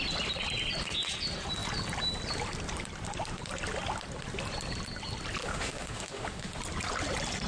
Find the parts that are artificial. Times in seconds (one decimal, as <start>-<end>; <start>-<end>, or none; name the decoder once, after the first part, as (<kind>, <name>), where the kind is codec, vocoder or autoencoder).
5.4-6.6 (autoencoder, DAC-VAE)